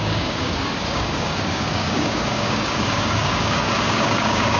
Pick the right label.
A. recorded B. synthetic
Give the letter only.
B